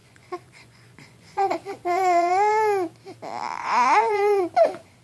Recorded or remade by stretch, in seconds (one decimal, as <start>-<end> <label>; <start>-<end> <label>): 0.0-2.5 remade; 2.5-3.6 recorded; 3.6-4.4 remade; 4.4-5.0 recorded